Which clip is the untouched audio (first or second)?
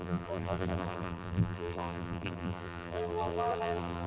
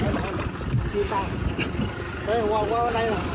second